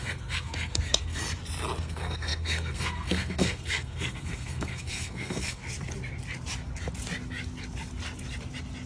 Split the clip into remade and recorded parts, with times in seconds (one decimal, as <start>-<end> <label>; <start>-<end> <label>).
0.0-1.2 remade; 1.2-1.8 recorded; 1.8-5.6 remade; 5.6-8.9 recorded